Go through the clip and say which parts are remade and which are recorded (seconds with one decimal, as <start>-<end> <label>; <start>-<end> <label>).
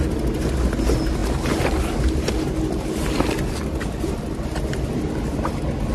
0.0-5.9 recorded